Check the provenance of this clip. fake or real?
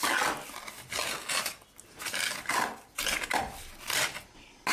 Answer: real